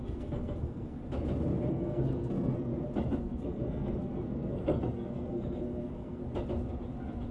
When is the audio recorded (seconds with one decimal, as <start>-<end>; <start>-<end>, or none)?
1.0-1.7; 2.7-3.2; 6.2-7.3